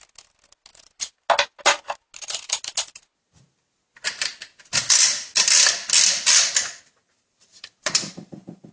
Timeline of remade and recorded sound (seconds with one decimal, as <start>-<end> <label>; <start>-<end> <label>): 0.0-7.0 recorded; 7.0-8.7 remade